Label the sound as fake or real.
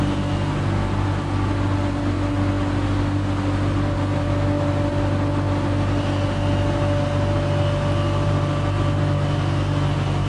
real